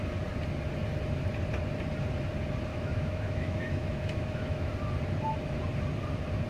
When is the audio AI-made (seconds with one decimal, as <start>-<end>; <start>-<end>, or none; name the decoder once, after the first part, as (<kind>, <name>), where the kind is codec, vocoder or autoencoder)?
2.7-4.7 (autoencoder, DAC-VAE)